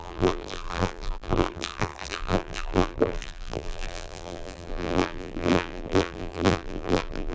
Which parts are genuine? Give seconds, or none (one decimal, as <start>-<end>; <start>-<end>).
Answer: none